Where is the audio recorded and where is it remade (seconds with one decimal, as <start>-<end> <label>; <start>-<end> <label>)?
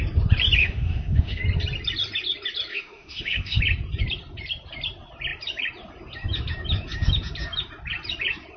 0.0-0.6 recorded; 0.6-1.4 remade; 1.4-2.7 recorded; 2.7-3.6 remade; 3.6-8.6 recorded